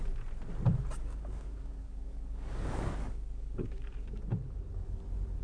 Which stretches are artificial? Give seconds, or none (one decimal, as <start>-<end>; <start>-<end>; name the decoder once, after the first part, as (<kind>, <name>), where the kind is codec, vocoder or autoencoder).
1.0-4.2 (codec, DAC)